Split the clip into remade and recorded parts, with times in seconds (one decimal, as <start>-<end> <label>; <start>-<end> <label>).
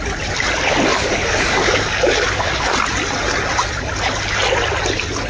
0.0-0.9 recorded; 0.9-2.7 remade; 2.7-5.3 recorded